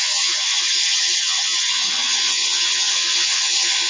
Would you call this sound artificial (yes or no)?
yes